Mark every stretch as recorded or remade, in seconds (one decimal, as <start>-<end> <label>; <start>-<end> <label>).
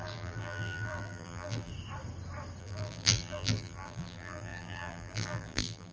0.0-1.7 remade; 1.7-2.6 recorded; 2.6-5.9 remade